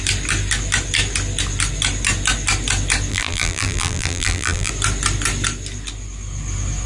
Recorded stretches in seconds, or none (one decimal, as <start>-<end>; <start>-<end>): 0.0-3.1; 4.7-6.9